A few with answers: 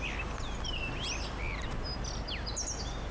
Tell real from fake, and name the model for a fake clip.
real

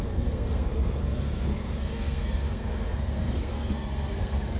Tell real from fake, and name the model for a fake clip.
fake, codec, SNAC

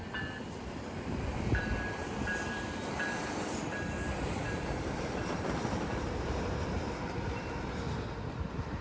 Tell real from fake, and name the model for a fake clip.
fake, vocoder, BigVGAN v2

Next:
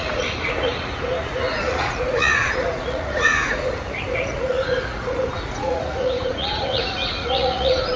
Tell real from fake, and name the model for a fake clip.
fake, vocoder, Vocos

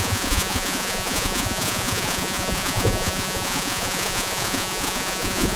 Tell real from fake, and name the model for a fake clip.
fake, vocoder, Vocos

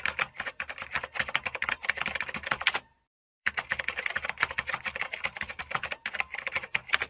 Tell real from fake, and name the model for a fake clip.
fake, vocoder, BigVGAN v2